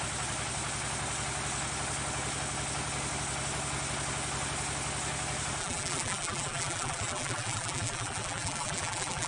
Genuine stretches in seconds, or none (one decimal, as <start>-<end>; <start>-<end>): 0.0-5.6

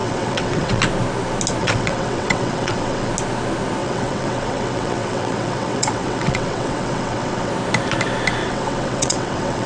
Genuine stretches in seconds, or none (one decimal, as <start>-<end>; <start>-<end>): 0.8-1.6; 3.1-3.8; 7.5-8.4